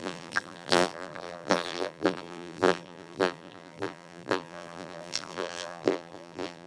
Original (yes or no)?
no